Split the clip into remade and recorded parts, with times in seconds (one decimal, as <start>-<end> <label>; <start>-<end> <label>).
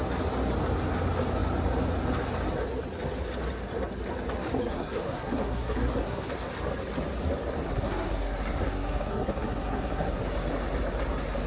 0.0-4.6 recorded; 4.6-6.3 remade; 6.3-7.6 recorded; 7.6-10.2 remade; 10.2-11.5 recorded